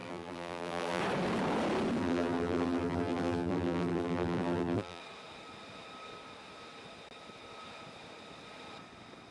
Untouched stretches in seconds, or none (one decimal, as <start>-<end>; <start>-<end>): 1.0-2.0; 5.0-9.3